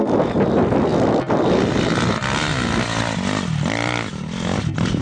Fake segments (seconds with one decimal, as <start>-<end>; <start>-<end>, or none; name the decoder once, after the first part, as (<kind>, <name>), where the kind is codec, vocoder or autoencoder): none